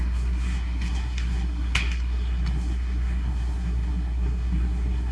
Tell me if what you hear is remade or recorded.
remade